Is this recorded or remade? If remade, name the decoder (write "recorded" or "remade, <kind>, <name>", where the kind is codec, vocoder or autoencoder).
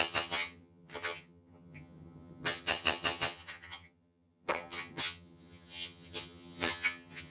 remade, vocoder, HiFi-GAN